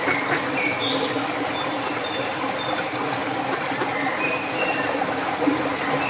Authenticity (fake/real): real